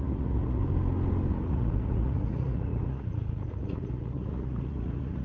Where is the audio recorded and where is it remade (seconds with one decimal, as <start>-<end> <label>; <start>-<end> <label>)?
0.0-0.6 remade; 0.6-1.3 recorded; 1.3-5.2 remade

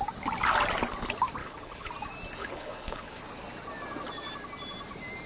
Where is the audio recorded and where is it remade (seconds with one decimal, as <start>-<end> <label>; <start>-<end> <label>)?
0.0-1.4 recorded; 1.4-1.9 remade; 1.9-2.4 recorded; 2.4-3.2 remade; 3.2-5.3 recorded

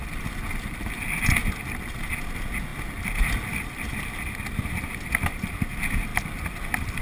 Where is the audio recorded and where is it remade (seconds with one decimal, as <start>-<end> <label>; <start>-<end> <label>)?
0.0-1.4 recorded; 1.4-2.1 remade; 2.1-7.0 recorded

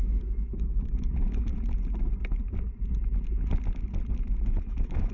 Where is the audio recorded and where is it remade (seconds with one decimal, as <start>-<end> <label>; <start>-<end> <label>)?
0.0-1.5 remade; 1.5-4.6 recorded; 4.6-5.1 remade

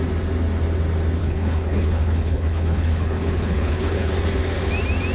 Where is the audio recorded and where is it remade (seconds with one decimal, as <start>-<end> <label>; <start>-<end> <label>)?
0.0-1.2 recorded; 1.2-4.1 remade; 4.1-5.1 recorded

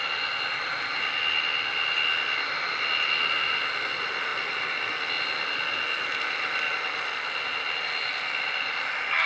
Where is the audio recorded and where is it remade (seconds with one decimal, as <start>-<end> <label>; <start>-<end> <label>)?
0.0-9.3 recorded

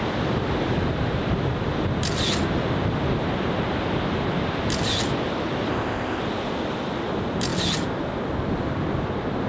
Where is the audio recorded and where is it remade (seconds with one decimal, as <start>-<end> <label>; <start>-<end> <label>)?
0.0-5.7 recorded; 5.7-6.2 remade; 6.2-9.5 recorded

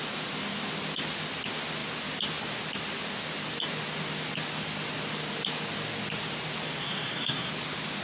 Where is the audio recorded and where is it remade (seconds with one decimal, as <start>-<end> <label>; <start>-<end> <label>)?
0.0-6.8 recorded; 6.8-7.5 remade; 7.5-8.0 recorded